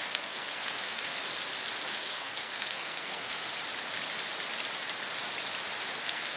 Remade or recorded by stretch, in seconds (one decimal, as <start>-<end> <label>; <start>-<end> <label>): 0.0-1.2 remade; 1.2-1.9 recorded; 1.9-3.5 remade; 3.5-6.0 recorded; 6.0-6.4 remade